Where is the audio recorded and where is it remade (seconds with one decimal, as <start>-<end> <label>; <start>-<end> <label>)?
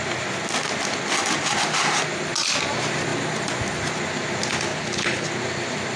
0.0-4.7 recorded; 4.7-5.3 remade; 5.3-6.0 recorded